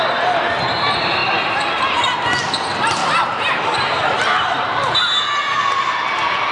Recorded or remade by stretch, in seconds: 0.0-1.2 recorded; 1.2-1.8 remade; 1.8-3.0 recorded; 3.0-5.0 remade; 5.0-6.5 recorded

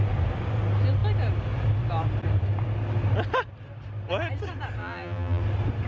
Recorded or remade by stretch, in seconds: 0.0-4.8 recorded; 4.8-5.4 remade; 5.4-5.9 recorded

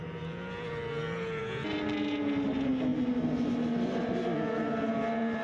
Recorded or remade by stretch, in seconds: 0.0-5.4 recorded

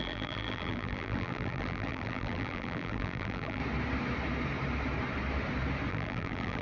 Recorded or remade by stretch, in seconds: 0.0-3.6 remade; 3.6-5.9 recorded; 5.9-6.6 remade

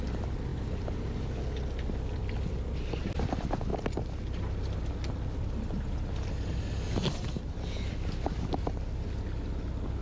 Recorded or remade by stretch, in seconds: 0.0-10.0 recorded